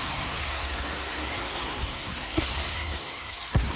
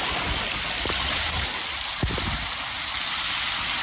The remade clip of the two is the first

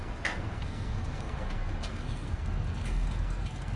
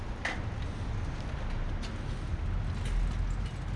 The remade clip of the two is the first